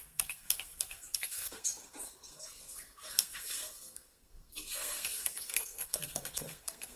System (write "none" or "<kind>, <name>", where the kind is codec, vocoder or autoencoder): codec, SNAC